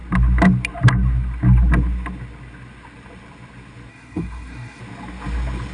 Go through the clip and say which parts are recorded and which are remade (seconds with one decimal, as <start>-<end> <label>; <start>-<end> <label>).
0.0-3.9 recorded; 3.9-4.8 remade; 4.8-5.7 recorded